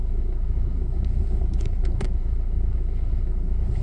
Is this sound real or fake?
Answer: fake